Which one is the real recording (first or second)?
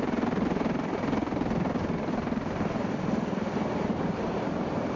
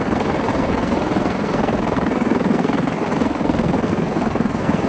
first